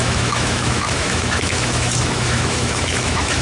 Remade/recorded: remade